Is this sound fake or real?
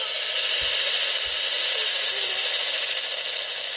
real